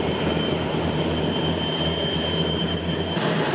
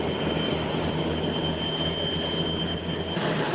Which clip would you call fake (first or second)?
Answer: first